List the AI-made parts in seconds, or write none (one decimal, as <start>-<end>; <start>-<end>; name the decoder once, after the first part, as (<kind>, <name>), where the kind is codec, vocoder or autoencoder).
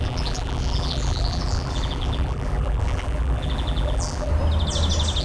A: 0.0-4.3 (vocoder, BigVGAN v2)